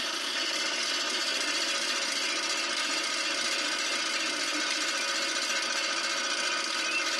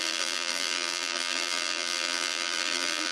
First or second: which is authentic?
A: first